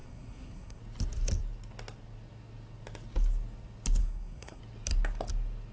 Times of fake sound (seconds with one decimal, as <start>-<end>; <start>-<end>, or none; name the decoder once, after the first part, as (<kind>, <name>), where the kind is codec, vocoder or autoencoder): 0.0-0.8 (codec, SNAC); 4.0-4.6